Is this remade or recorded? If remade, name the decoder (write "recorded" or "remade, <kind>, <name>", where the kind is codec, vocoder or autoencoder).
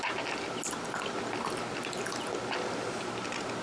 recorded